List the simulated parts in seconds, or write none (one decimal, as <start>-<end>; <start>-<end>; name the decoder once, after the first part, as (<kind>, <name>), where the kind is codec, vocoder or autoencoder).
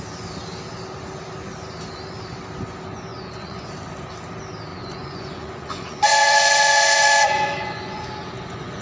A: 3.1-3.7 (vocoder, Vocos); 4.7-8.8